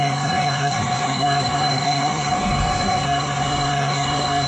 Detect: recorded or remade remade